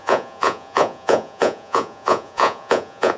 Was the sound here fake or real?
fake